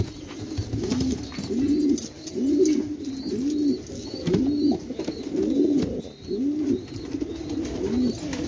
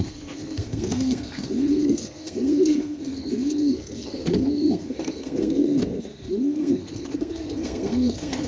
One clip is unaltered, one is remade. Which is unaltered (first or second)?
first